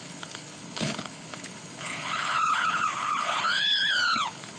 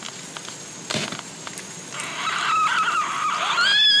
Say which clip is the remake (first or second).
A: first